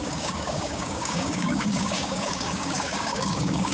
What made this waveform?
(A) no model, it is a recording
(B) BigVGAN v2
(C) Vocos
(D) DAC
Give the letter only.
D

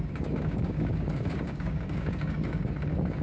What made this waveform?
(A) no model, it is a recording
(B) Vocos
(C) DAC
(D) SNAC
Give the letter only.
C